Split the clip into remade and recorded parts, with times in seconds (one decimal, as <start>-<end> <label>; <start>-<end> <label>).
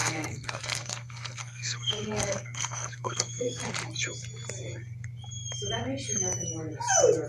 0.0-3.6 remade; 3.6-7.3 recorded